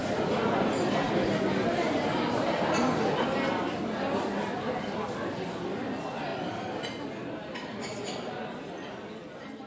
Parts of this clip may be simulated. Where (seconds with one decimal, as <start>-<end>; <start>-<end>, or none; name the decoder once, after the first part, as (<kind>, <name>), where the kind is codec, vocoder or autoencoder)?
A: 0.0-3.9 (vocoder, BigVGAN v2); 6.3-9.2